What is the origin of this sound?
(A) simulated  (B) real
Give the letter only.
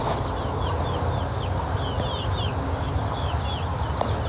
B